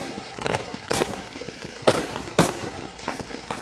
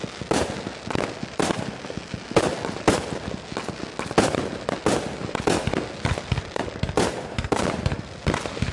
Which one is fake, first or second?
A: first